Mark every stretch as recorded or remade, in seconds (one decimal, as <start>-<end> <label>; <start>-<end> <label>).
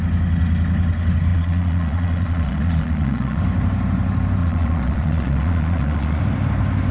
0.0-1.3 recorded; 1.3-3.4 remade; 3.4-4.4 recorded; 4.4-6.2 remade; 6.2-6.9 recorded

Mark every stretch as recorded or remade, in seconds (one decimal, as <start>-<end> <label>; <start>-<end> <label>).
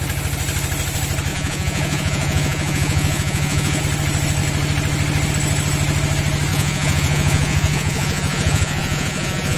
0.0-1.3 recorded; 1.3-3.8 remade; 3.8-6.5 recorded; 6.5-9.6 remade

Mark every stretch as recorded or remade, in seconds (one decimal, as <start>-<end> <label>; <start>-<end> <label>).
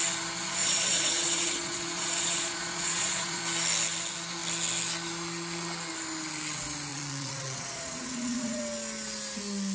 0.0-0.6 recorded; 0.6-3.4 remade; 3.4-6.9 recorded; 6.9-8.6 remade; 8.6-9.7 recorded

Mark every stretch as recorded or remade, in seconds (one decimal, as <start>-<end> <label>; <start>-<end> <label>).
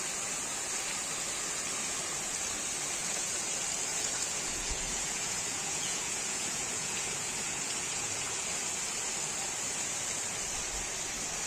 0.0-3.0 recorded; 3.0-3.5 remade; 3.5-3.9 recorded; 3.9-8.6 remade; 8.6-11.5 recorded